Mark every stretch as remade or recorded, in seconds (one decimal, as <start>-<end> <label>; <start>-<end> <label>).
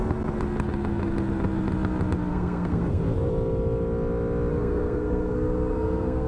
0.0-2.3 recorded; 2.3-3.0 remade; 3.0-4.5 recorded; 4.5-6.3 remade